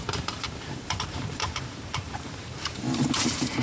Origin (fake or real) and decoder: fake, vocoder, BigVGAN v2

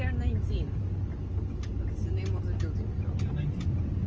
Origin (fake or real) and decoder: real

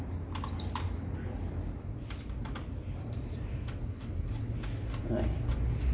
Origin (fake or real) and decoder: real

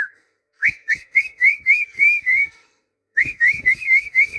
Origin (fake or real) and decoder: fake, codec, SNAC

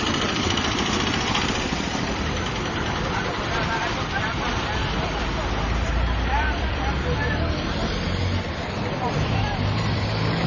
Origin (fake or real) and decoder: fake, vocoder, BigVGAN v2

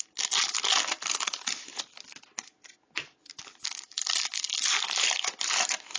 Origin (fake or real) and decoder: real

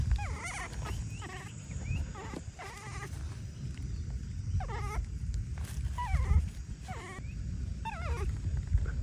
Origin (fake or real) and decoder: real